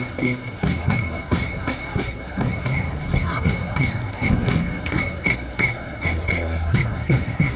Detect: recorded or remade remade